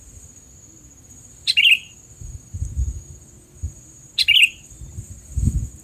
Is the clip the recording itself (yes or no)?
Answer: yes